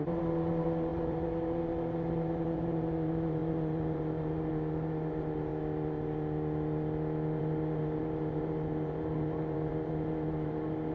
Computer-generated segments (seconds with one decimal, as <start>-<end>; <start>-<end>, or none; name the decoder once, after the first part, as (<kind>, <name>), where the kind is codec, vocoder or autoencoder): 0.0-5.5 (vocoder, BigVGAN v2); 7.4-10.9